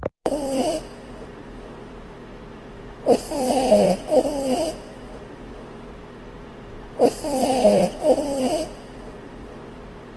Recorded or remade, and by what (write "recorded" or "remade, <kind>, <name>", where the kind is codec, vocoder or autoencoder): remade, vocoder, BigVGAN v2